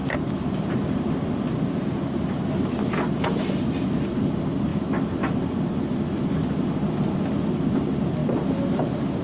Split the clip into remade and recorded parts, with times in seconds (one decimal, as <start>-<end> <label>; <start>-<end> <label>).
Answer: 0.0-9.2 recorded